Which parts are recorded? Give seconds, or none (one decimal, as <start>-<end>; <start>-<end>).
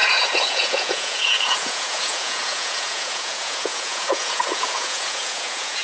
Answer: none